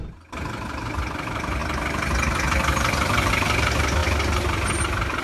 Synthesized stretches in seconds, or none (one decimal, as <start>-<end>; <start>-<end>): none